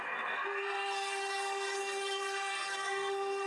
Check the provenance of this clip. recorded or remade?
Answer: remade